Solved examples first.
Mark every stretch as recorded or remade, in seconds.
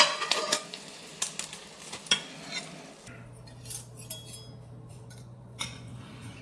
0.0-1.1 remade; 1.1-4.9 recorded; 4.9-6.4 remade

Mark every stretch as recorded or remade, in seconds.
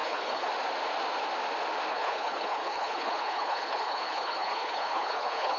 0.0-0.5 remade; 0.5-1.9 recorded; 1.9-5.6 remade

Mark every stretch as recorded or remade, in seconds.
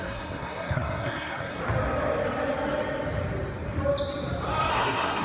0.0-1.6 remade; 1.6-4.7 recorded; 4.7-5.2 remade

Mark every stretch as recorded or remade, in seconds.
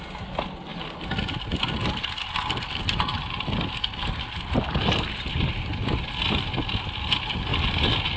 0.0-8.2 recorded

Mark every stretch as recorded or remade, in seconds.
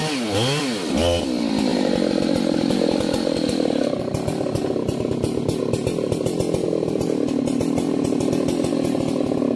0.0-1.7 recorded; 1.7-5.6 remade; 5.6-9.6 recorded